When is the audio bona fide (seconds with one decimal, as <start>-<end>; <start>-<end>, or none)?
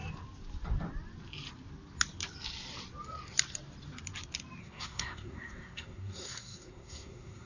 0.0-4.6